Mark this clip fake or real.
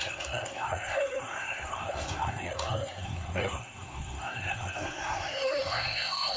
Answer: fake